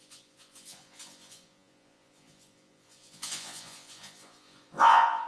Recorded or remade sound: remade